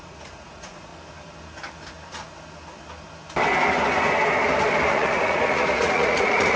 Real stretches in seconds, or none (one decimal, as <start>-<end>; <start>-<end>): 0.9-4.9